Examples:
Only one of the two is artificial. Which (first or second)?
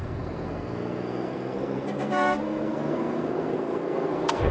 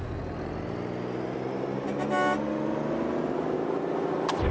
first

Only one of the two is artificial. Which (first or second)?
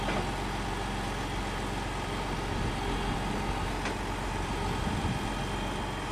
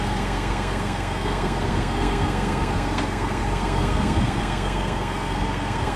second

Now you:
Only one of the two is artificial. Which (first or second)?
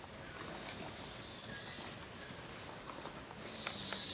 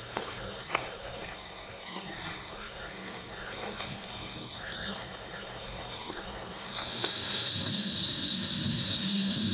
second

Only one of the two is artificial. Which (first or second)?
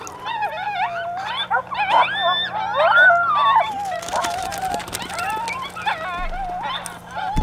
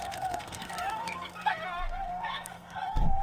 second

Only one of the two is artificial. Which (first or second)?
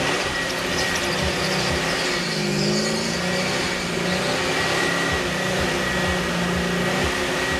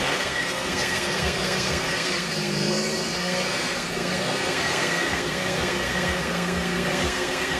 second